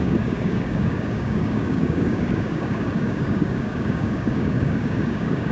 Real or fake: fake